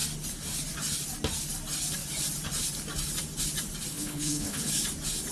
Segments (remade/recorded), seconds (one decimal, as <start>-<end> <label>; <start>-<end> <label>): 0.0-3.9 recorded; 3.9-4.7 remade; 4.7-5.3 recorded